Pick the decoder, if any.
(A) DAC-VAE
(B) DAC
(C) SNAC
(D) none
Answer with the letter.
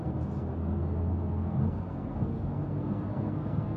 C